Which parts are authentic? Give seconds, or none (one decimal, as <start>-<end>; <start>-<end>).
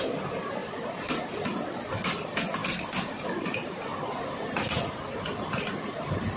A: 0.0-0.6; 1.9-2.6; 3.2-6.4